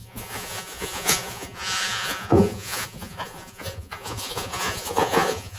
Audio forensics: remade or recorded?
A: remade